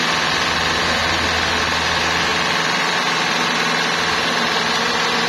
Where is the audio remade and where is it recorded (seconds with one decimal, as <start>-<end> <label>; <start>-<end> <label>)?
0.0-2.3 recorded; 2.3-2.9 remade; 2.9-5.3 recorded